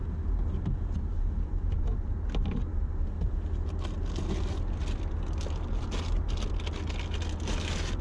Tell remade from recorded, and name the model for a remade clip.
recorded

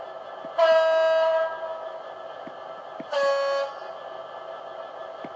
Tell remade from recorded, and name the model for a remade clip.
recorded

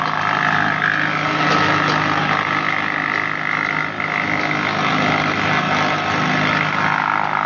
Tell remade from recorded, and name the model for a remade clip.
recorded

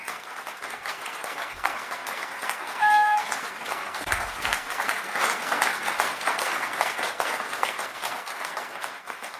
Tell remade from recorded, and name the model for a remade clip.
remade, codec, SNAC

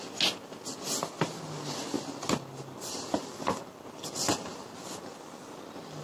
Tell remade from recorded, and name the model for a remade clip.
recorded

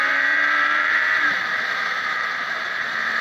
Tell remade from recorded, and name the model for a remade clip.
remade, vocoder, BigVGAN v2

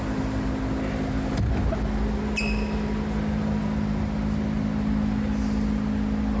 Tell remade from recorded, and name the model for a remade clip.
recorded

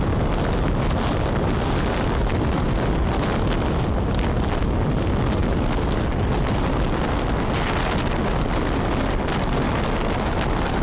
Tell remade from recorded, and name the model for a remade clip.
recorded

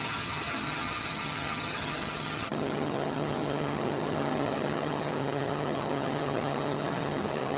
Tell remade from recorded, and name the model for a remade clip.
remade, vocoder, HiFi-GAN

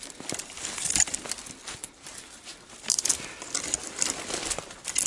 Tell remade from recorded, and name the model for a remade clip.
recorded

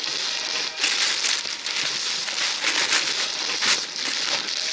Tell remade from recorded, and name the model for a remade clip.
recorded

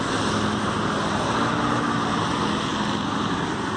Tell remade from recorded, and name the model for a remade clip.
recorded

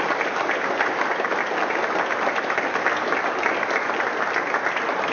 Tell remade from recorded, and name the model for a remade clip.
recorded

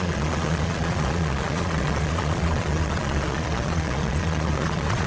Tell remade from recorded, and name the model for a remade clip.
remade, vocoder, Vocos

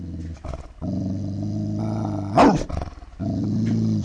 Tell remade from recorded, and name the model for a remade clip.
recorded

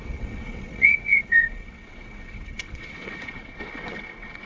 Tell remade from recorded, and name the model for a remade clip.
remade, vocoder, WaveNeXt